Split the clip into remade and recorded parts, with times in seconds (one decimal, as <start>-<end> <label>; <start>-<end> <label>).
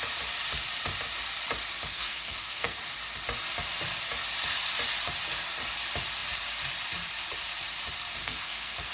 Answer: 0.0-1.9 recorded; 1.9-2.8 remade; 2.8-8.2 recorded; 8.2-8.9 remade